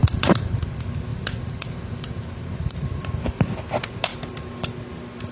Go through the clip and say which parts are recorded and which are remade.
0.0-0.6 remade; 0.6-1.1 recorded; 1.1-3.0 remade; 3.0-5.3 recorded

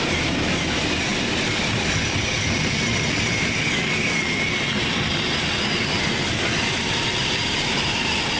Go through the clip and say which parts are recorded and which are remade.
0.0-8.4 recorded